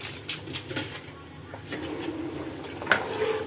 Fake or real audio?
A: real